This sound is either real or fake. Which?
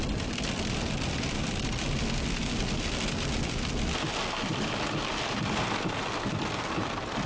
real